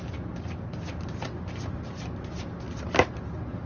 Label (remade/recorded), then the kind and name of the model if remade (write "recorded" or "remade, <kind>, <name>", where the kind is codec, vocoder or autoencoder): recorded